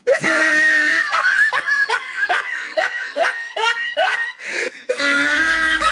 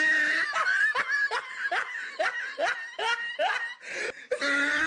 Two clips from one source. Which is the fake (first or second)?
first